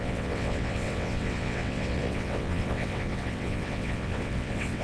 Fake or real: fake